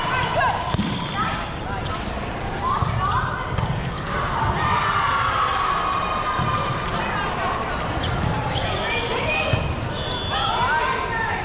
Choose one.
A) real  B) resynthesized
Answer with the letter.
A